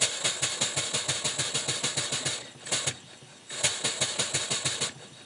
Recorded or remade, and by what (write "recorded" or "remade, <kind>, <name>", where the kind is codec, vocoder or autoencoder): recorded